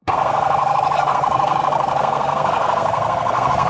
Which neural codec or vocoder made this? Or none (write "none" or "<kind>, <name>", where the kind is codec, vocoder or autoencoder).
codec, SNAC